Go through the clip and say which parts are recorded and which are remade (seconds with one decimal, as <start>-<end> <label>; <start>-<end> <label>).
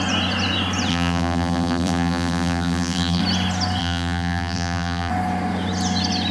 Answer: 0.0-0.9 recorded; 0.9-3.2 remade; 3.2-3.8 recorded; 3.8-5.1 remade; 5.1-6.3 recorded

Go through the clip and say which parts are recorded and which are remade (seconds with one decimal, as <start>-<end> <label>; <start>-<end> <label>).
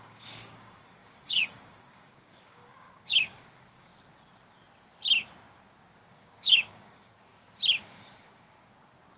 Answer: 0.0-3.9 remade; 3.9-6.1 recorded; 6.1-7.1 remade; 7.1-9.2 recorded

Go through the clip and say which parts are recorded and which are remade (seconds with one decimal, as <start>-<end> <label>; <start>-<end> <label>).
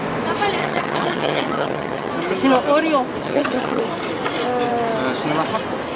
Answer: 0.0-0.6 recorded; 0.6-2.1 remade; 2.1-3.2 recorded; 3.2-3.8 remade; 3.8-6.0 recorded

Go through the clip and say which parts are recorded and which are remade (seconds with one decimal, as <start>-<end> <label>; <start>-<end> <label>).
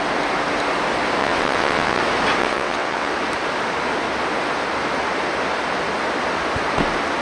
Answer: 0.0-1.2 recorded; 1.2-2.0 remade; 2.0-2.4 recorded; 2.4-3.1 remade; 3.1-7.2 recorded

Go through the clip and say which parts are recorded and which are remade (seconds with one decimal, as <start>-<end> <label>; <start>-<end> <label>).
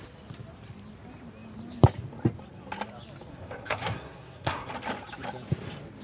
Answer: 0.0-3.3 recorded; 3.3-4.7 remade; 4.7-6.0 recorded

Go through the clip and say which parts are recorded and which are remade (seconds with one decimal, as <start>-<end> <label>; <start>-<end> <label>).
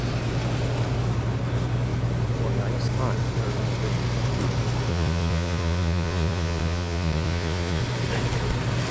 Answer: 0.0-4.9 recorded; 4.9-7.8 remade; 7.8-8.9 recorded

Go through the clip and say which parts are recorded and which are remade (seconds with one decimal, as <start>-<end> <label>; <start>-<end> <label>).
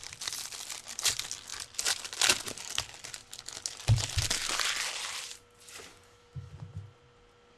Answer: 0.0-5.9 recorded; 5.9-6.5 remade; 6.5-7.6 recorded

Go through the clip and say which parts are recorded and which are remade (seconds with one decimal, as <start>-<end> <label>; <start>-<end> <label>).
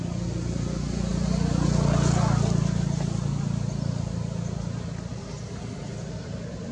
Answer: 0.0-6.7 recorded